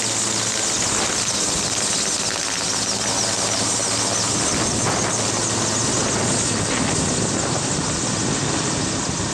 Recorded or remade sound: recorded